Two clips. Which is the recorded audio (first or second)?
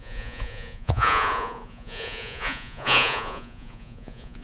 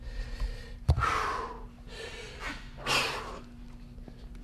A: second